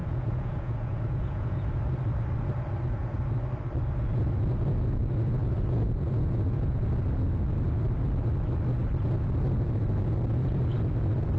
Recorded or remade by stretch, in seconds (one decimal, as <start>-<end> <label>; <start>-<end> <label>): 0.0-1.8 remade; 1.8-5.4 recorded; 5.4-6.8 remade; 6.8-11.4 recorded

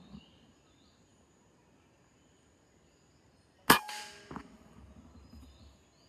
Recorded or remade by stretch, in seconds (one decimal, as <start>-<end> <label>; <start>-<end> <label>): 0.0-6.1 recorded